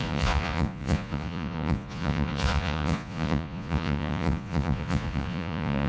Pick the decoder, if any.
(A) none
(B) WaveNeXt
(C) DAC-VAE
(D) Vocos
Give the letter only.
D